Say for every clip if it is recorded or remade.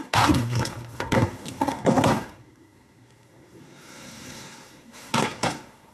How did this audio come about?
remade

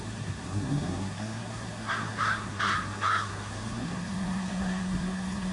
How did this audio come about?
remade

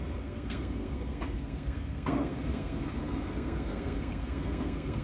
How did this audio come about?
remade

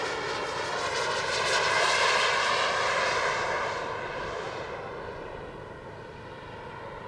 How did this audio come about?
recorded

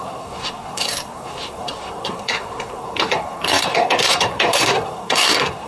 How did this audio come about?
remade